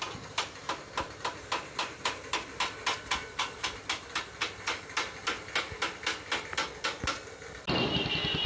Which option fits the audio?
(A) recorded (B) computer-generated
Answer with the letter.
A